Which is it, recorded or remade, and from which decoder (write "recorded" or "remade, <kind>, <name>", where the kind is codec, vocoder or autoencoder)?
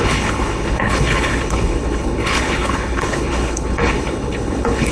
remade, codec, HILCodec